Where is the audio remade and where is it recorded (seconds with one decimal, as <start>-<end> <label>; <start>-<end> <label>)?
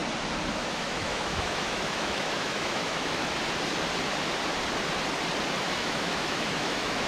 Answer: 0.0-0.5 recorded; 0.5-3.2 remade; 3.2-5.6 recorded; 5.6-7.1 remade